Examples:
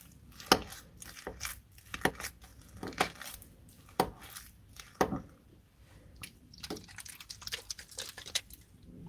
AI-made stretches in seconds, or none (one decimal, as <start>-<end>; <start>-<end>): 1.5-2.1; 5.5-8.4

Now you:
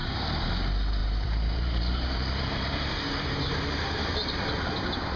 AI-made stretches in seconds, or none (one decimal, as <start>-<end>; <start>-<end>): 0.0-0.5; 1.0-4.1

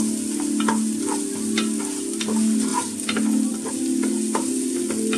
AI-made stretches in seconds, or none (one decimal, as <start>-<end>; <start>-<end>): none